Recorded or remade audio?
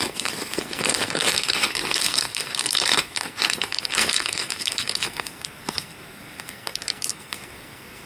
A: remade